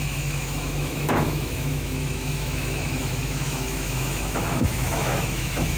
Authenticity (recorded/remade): remade